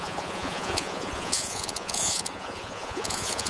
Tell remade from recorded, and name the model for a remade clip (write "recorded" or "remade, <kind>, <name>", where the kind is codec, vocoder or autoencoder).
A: remade, vocoder, Vocos